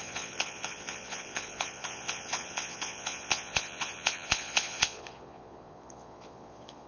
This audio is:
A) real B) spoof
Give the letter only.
B